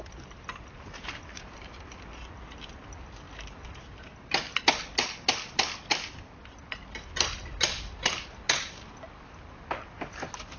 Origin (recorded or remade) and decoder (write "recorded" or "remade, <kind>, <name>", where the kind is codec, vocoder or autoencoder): recorded